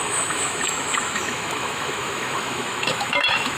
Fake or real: fake